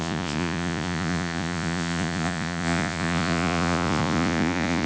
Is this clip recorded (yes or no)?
no